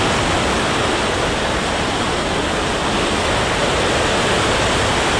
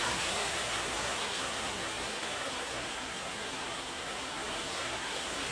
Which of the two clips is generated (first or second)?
second